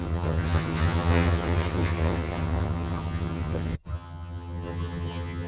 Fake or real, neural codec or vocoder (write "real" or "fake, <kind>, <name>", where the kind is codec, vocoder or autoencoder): fake, vocoder, HiFi-GAN